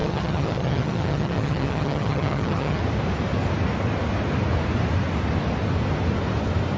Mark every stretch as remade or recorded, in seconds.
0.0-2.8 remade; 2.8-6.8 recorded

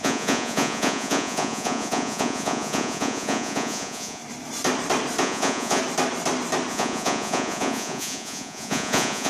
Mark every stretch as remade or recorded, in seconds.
0.0-4.2 remade; 4.2-5.2 recorded; 5.2-5.8 remade; 5.8-6.7 recorded; 6.7-9.3 remade

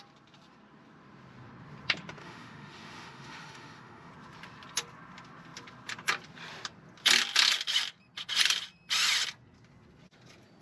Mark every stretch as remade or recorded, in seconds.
0.0-2.2 recorded; 2.2-4.1 remade; 4.1-10.6 recorded

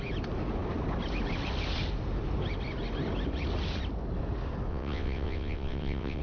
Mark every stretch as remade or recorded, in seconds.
0.0-4.7 recorded; 4.7-6.2 remade

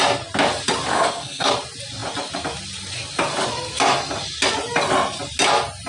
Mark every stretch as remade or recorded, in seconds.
0.0-0.9 recorded; 0.9-1.5 remade; 1.5-5.9 recorded

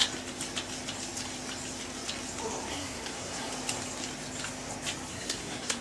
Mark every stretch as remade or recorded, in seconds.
0.0-2.7 recorded; 2.7-3.5 remade; 3.5-5.1 recorded; 5.1-5.8 remade

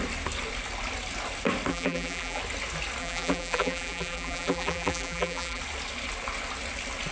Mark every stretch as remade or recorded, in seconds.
0.0-1.7 recorded; 1.7-2.4 remade; 2.4-3.0 recorded; 3.0-5.6 remade; 5.6-7.1 recorded